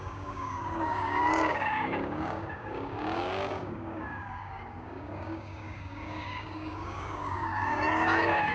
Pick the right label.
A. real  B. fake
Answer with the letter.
B